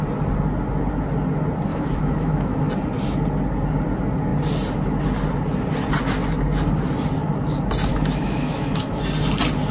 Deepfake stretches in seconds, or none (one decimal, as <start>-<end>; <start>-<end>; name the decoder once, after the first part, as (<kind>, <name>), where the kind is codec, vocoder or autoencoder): 1.7-2.6 (autoencoder, DAC-VAE); 7.9-9.0

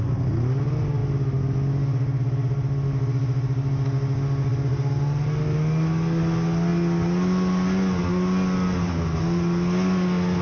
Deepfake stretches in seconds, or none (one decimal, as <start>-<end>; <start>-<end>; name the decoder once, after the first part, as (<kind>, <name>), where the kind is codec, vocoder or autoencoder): none

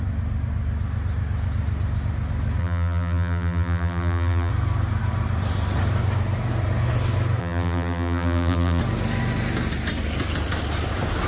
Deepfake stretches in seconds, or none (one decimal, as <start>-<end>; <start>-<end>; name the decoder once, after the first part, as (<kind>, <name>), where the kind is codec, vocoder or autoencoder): 2.6-4.5 (vocoder, BigVGAN v2); 7.4-8.8

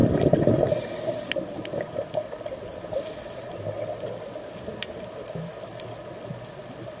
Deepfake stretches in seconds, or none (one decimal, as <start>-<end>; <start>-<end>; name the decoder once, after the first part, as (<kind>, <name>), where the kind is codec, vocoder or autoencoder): 0.0-4.2 (vocoder, BigVGAN v2)

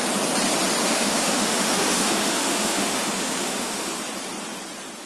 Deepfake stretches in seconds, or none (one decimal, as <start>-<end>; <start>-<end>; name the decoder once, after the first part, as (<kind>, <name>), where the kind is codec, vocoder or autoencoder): 0.8-3.9 (autoencoder, DAC-VAE)

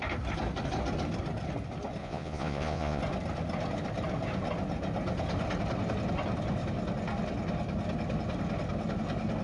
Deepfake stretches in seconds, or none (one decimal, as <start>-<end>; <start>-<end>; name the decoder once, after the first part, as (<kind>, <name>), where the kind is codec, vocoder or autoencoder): 2.0-3.0 (vocoder, Vocos)

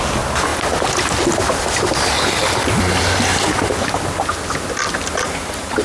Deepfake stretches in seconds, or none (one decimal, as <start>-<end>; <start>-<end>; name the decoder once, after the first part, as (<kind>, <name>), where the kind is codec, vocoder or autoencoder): none

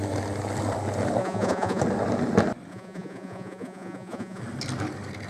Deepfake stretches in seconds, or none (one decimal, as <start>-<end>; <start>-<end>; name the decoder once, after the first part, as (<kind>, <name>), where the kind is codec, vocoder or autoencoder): 1.2-1.8 (vocoder, Vocos); 2.7-4.4